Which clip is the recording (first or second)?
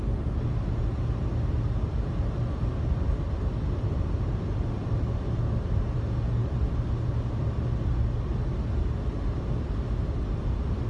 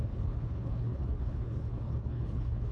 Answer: first